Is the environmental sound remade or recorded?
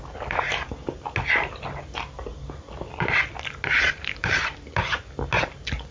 recorded